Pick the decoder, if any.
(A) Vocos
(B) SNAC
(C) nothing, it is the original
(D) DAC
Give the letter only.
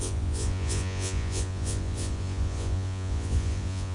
A